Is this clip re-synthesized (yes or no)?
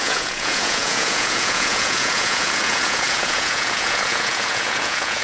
yes